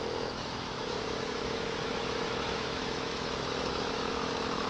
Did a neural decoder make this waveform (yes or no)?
yes